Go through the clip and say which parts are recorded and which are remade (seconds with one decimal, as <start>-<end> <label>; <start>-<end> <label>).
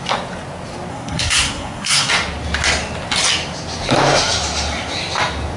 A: 0.0-0.9 recorded; 0.9-2.1 remade; 2.1-5.6 recorded